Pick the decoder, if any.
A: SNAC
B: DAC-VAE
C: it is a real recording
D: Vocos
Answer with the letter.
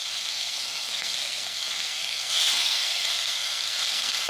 A